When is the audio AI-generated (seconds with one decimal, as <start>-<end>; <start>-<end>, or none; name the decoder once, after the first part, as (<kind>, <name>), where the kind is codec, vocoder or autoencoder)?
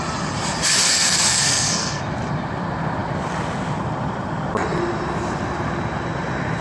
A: 0.8-2.0 (codec, SNAC)